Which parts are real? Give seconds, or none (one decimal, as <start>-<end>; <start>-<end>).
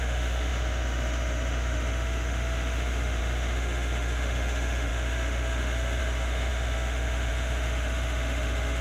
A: none